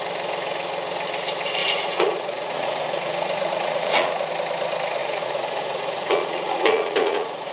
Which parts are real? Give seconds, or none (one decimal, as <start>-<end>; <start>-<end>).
0.0-1.6; 4.3-5.0